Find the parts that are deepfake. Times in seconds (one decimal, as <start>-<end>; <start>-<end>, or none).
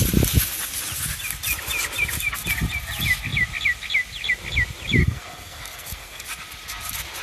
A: 5.0-6.2